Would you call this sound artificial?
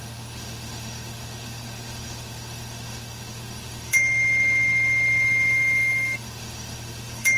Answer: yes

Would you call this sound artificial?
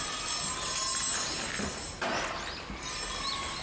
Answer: no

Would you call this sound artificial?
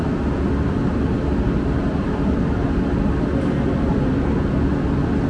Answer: no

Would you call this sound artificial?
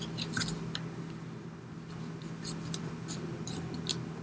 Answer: no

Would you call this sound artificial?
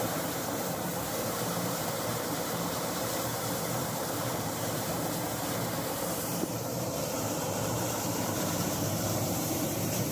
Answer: yes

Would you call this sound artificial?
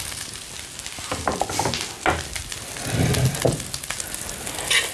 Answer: no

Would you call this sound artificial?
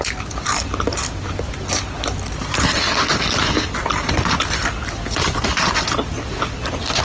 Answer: no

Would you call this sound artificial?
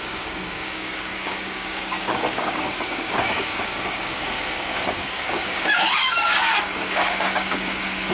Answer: yes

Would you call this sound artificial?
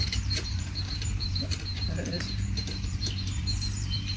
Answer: yes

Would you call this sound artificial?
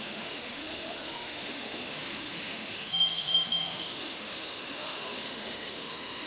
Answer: yes